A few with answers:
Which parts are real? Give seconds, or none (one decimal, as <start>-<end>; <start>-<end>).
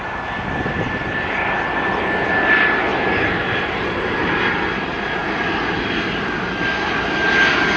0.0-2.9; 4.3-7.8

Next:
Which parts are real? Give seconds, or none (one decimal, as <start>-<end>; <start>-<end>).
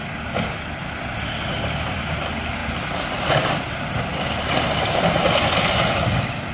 0.0-6.5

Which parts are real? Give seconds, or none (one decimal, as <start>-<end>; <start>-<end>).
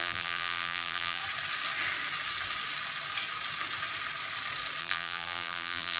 1.2-4.8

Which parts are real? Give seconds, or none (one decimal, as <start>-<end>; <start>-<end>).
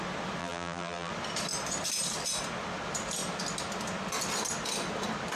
0.0-0.4; 1.1-5.4